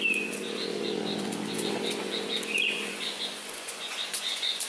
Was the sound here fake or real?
fake